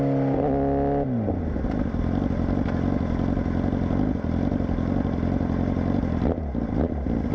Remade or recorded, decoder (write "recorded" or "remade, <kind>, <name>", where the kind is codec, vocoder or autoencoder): recorded